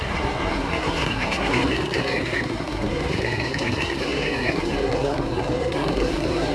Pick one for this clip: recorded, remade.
remade